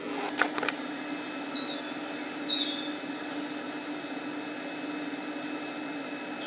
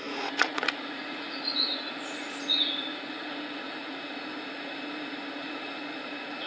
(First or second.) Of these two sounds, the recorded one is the first